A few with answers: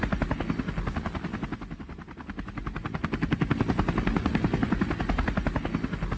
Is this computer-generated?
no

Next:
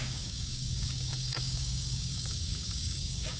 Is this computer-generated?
yes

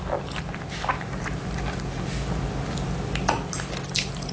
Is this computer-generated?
no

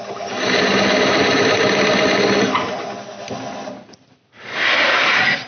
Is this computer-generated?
no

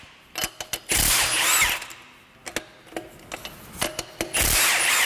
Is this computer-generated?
no